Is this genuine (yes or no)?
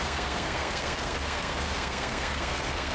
no